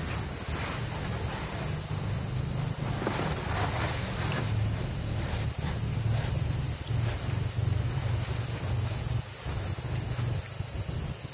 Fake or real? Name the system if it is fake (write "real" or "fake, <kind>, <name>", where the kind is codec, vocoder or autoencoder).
real